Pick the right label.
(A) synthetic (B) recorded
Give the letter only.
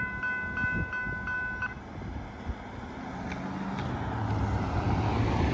B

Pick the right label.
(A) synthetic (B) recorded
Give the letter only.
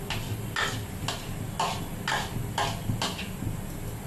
B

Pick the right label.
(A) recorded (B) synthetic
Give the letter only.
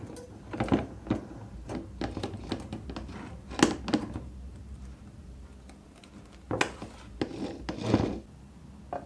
A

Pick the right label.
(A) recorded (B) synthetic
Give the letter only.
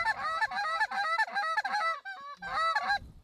A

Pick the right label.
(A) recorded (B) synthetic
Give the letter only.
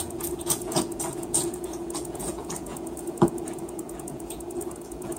B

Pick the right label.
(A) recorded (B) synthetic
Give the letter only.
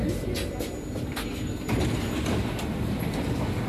A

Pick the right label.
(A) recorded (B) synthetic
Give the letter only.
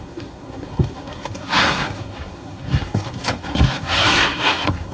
B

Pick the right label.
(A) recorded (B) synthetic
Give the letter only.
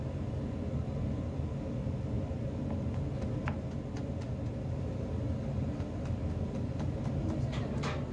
A